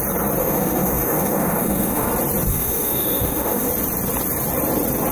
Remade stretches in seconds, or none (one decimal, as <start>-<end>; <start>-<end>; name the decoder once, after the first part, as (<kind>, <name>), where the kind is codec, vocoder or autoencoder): 0.4-2.1 (autoencoder, DAC-VAE); 2.5-3.7